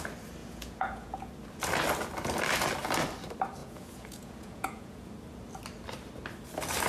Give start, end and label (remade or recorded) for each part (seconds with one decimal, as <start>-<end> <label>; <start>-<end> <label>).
0.0-0.4 recorded; 0.4-1.3 remade; 1.3-3.6 recorded; 3.6-5.1 remade; 5.1-6.9 recorded